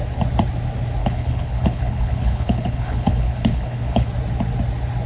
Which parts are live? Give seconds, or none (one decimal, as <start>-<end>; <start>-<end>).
0.0-1.0; 4.1-5.1